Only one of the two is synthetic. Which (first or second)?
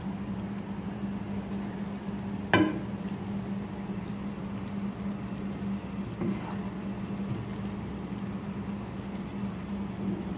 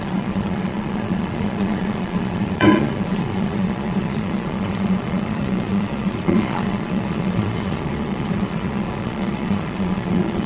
second